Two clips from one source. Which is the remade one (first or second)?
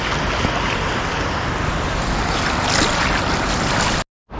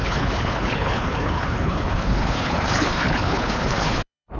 second